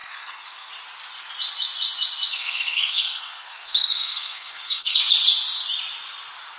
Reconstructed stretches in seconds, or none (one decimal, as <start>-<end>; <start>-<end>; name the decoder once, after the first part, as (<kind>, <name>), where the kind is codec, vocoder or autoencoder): 0.0-0.7 (codec, SNAC); 2.3-5.0